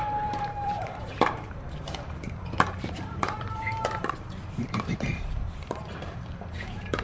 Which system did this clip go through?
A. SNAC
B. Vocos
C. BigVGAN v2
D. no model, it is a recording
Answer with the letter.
C